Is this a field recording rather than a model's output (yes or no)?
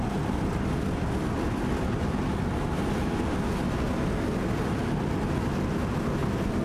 yes